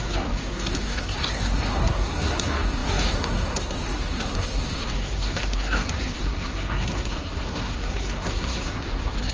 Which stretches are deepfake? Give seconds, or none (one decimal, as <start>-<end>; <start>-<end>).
0.0-9.3